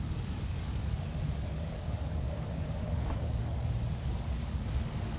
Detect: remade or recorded remade